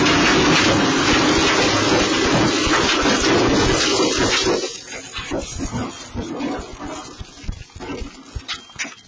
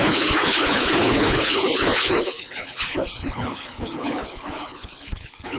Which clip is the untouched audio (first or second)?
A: first